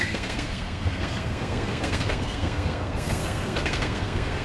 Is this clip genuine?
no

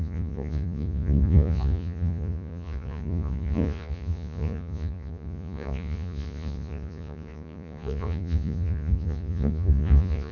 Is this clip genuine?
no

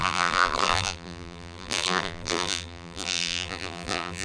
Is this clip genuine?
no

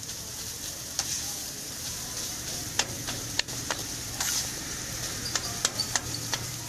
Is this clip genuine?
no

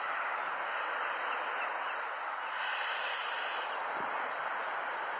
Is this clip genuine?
yes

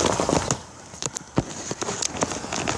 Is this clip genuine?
yes